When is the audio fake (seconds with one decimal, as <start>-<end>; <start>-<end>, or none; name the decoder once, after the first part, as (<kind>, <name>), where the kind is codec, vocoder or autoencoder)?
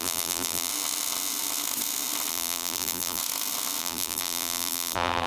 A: 0.0-0.7 (vocoder, BigVGAN v2); 2.3-3.2; 3.8-5.3